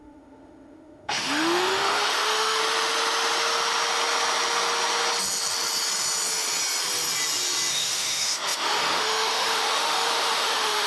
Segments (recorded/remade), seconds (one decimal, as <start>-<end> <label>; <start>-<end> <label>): 0.0-2.6 remade; 2.6-7.7 recorded; 7.7-10.9 remade